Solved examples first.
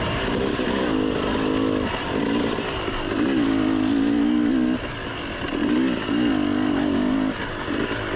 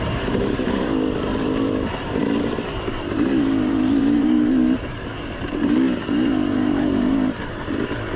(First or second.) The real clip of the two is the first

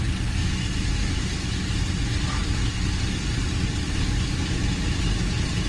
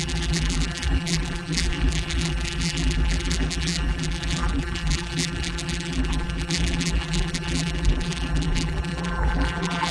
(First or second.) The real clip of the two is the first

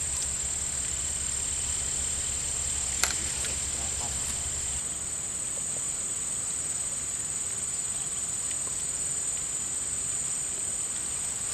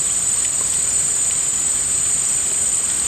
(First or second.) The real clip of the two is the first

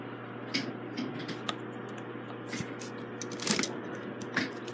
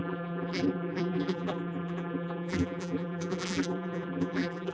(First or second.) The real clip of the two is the first